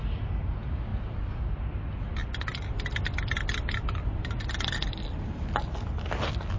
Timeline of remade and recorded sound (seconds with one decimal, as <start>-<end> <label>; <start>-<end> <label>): 0.0-6.6 recorded